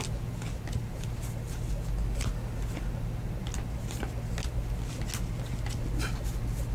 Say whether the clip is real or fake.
real